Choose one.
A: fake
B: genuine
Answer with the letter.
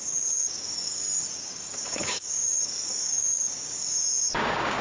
A